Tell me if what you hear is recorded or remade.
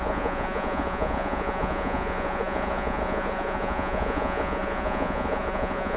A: remade